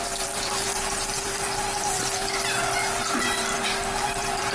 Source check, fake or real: fake